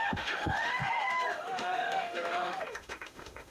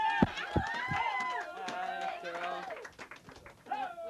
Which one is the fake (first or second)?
first